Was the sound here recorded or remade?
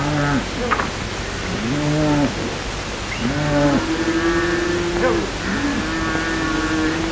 recorded